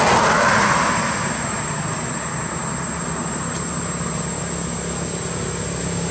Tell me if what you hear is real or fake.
real